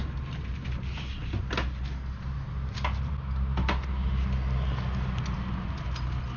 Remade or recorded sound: recorded